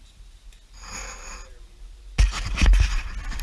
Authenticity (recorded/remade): recorded